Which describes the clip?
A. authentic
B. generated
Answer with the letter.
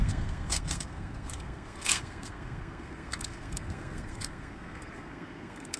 B